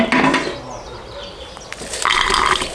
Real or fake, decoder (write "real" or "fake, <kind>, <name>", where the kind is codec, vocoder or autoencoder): real